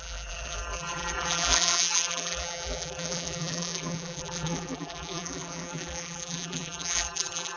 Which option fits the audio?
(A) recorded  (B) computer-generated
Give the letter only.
B